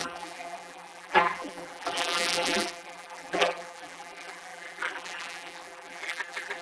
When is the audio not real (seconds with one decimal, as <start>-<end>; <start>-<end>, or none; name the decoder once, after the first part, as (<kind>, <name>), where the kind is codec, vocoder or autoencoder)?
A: 0.0-6.6 (vocoder, BigVGAN v2)

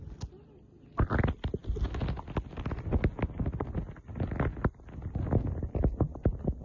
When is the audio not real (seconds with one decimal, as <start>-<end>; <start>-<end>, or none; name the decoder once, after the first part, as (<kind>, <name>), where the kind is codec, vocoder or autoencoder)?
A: none